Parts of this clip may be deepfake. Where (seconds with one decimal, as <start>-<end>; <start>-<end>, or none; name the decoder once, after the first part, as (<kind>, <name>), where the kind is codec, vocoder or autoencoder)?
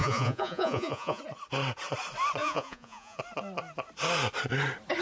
0.0-1.2 (vocoder, Vocos); 2.4-3.2